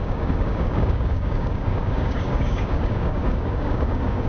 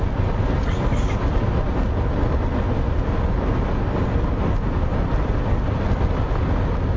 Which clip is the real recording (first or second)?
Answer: second